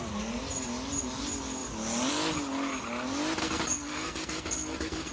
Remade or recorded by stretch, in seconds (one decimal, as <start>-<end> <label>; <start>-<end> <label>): 0.0-3.4 recorded; 3.4-5.1 remade